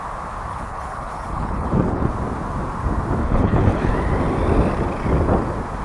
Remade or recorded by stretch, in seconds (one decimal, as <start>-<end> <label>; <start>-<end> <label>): 0.0-0.5 recorded; 0.5-2.1 remade; 2.1-3.2 recorded; 3.2-3.9 remade; 3.9-5.8 recorded

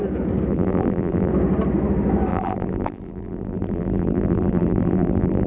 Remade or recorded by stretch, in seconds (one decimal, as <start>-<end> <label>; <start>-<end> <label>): 0.0-0.5 recorded; 0.5-1.3 remade; 1.3-2.3 recorded; 2.3-5.5 remade